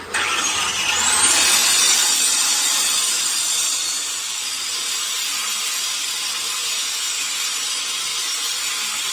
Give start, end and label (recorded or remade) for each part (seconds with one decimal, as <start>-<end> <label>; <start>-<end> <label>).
0.0-8.1 remade; 8.1-9.1 recorded